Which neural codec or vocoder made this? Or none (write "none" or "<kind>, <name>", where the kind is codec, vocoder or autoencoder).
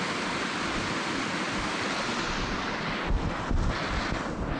none